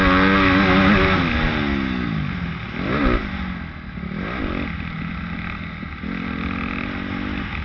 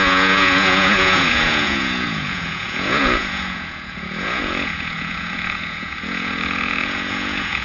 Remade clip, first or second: second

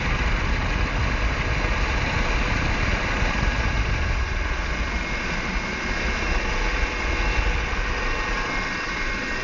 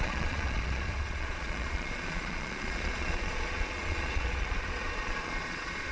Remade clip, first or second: second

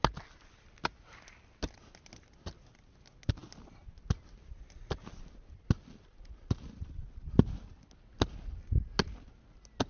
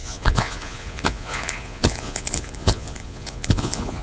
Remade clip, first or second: second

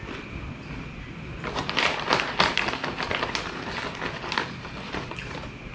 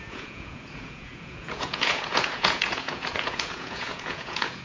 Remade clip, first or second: second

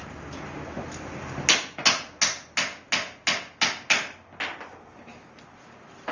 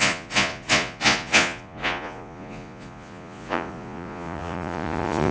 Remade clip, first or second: second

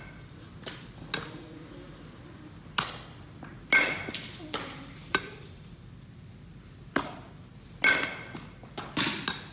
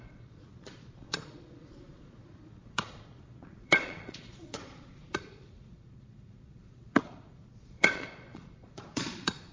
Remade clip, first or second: second